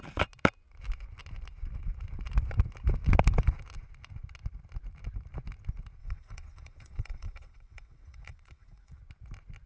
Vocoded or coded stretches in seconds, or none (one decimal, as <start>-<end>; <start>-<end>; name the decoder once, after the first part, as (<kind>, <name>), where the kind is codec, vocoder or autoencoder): 6.0-9.0 (vocoder, WaveNeXt)